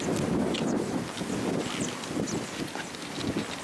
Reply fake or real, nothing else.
real